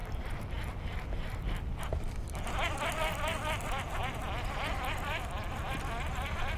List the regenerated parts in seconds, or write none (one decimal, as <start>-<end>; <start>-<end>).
none